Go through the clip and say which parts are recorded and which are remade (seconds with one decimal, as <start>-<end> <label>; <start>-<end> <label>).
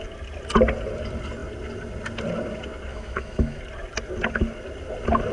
0.0-2.9 recorded; 2.9-3.6 remade; 3.6-5.3 recorded